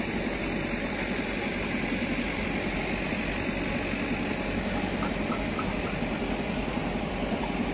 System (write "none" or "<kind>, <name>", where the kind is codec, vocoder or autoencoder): none